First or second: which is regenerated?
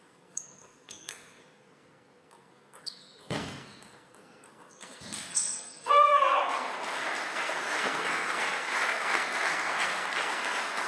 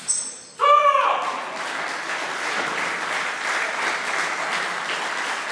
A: first